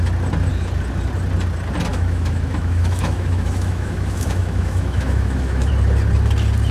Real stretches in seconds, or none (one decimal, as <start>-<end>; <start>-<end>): 0.0-1.9; 5.7-6.7